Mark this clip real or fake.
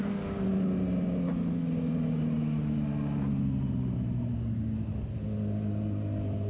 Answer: real